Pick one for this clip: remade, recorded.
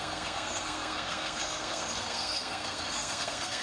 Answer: remade